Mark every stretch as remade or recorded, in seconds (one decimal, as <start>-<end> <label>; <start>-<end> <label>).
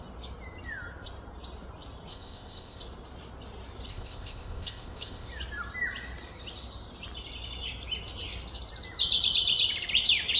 0.0-2.1 recorded; 2.1-2.8 remade; 2.8-3.9 recorded; 3.9-5.3 remade; 5.3-10.4 recorded